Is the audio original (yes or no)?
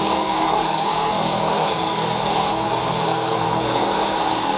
no